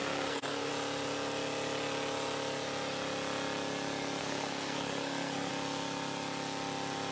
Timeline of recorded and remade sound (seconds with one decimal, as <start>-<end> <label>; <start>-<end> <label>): 0.0-0.7 remade; 0.7-4.2 recorded; 4.2-5.5 remade; 5.5-7.1 recorded

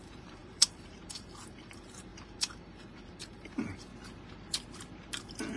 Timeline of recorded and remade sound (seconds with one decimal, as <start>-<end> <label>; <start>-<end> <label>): 0.0-3.9 remade; 3.9-5.6 recorded

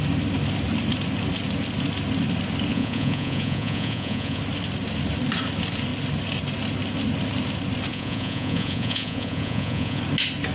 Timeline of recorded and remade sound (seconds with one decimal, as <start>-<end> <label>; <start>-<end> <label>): 0.0-2.7 recorded; 2.7-4.4 remade; 4.4-7.9 recorded; 7.9-10.0 remade; 10.0-10.5 recorded